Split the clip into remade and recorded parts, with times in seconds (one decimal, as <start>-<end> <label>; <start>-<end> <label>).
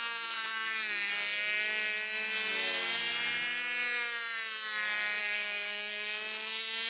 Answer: 0.0-1.1 remade; 1.1-5.2 recorded; 5.2-6.9 remade